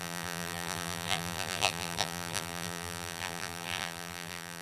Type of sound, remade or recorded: remade